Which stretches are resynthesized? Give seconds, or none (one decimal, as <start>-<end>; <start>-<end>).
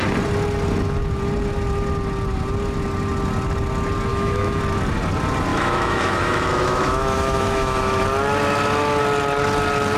4.1-4.6; 5.5-8.0